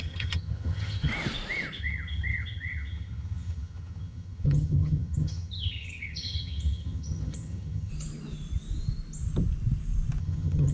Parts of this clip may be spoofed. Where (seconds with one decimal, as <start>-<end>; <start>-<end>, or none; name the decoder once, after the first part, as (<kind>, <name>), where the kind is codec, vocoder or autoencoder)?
0.0-1.1 (vocoder, HiFi-GAN); 1.8-7.9; 10.2-10.7